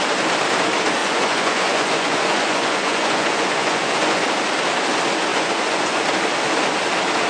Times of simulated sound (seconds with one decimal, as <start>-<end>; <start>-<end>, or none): 1.0-4.2; 5.3-6.0